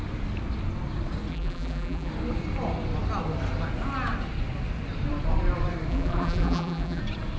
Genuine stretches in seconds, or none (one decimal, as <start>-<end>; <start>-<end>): 0.0-1.3; 2.1-5.9; 7.0-7.4